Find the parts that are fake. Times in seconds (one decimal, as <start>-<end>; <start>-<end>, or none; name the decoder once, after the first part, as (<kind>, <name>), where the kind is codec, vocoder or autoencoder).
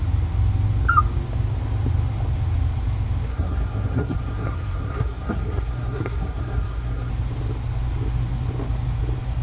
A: 3.3-7.1 (codec, SNAC)